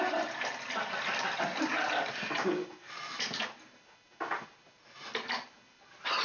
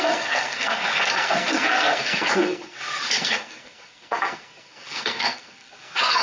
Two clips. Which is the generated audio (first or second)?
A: second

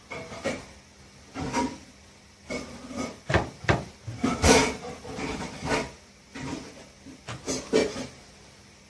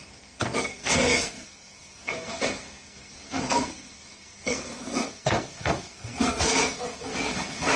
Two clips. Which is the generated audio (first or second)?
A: second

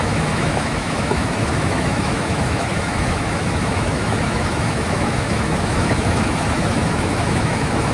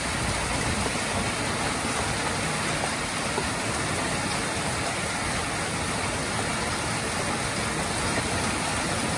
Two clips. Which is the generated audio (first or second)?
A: first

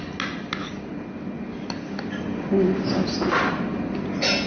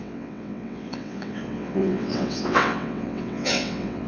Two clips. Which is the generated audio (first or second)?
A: second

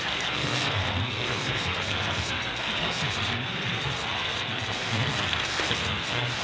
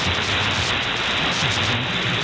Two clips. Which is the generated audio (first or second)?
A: first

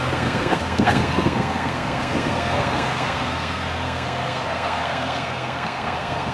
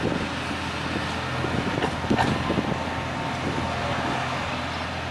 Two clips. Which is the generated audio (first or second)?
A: first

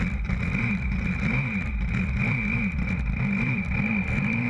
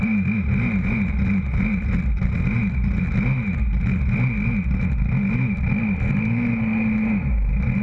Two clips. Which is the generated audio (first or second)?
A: first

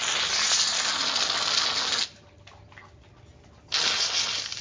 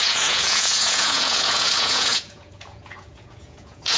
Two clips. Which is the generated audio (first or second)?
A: second